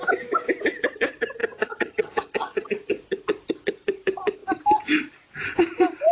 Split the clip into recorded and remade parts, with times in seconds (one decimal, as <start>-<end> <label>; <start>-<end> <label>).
0.0-1.4 recorded; 1.4-2.7 remade; 2.7-6.1 recorded